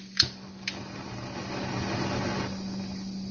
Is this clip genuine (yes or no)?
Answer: yes